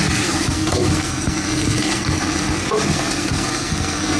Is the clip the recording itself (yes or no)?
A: no